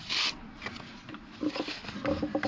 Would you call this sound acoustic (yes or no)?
yes